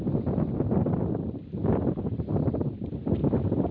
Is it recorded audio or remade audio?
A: recorded